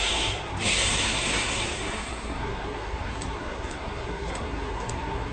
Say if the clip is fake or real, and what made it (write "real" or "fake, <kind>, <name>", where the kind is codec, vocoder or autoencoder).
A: fake, codec, SNAC